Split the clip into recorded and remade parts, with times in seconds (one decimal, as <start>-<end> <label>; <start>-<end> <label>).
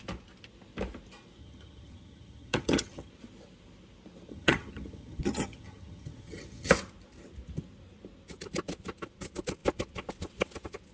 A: 0.0-1.4 recorded; 1.4-3.1 remade; 3.1-4.3 recorded; 4.3-6.7 remade; 6.7-10.9 recorded